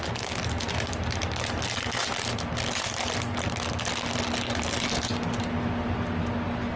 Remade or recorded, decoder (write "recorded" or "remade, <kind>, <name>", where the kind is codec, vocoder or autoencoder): recorded